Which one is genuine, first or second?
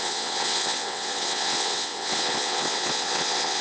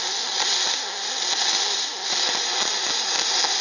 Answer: second